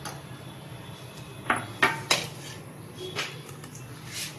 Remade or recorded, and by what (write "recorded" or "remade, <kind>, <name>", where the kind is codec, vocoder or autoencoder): recorded